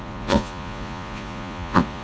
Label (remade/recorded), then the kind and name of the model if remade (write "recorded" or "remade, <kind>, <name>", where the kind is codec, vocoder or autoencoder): remade, vocoder, Vocos